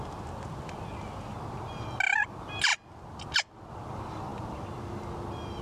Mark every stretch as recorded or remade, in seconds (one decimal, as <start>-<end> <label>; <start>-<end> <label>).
0.0-5.6 recorded